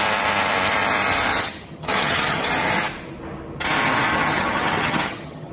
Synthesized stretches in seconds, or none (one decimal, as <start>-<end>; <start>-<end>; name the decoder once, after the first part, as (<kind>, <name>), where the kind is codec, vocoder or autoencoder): 1.3-2.5 (vocoder, HiFi-GAN); 4.1-5.5